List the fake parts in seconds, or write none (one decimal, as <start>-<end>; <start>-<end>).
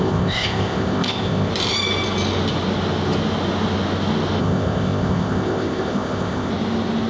0.0-1.5; 4.4-6.5